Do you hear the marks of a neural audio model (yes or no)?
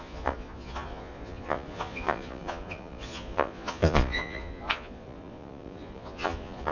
yes